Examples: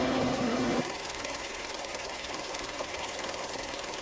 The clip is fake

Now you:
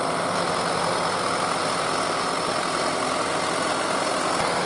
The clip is real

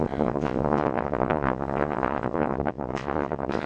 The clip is fake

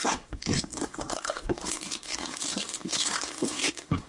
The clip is fake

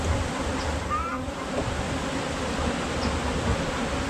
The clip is real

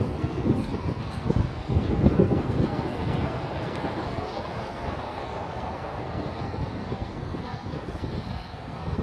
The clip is fake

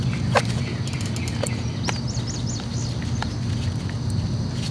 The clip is real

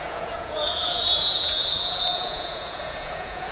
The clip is fake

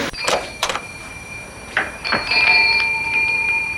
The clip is fake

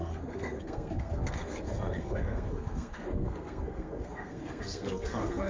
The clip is fake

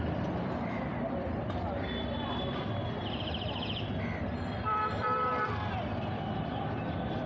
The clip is fake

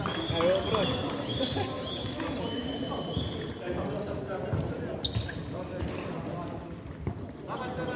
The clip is real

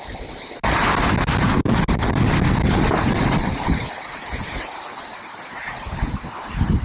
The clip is real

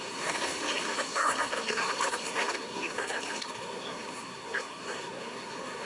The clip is fake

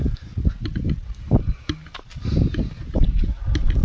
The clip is real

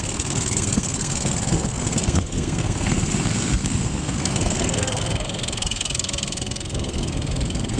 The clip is fake